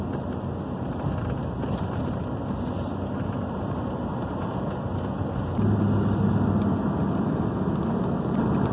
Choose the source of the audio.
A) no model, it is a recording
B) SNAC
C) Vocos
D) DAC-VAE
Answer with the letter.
A